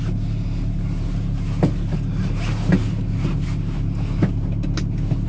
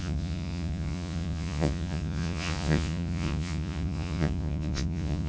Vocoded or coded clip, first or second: second